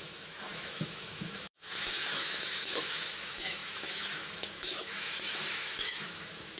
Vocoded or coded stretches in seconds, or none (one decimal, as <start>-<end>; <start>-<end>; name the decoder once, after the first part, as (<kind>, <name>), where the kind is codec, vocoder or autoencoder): 0.0-6.6 (autoencoder, DAC-VAE)